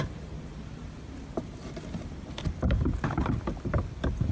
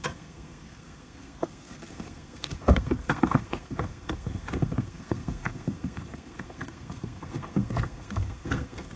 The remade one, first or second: second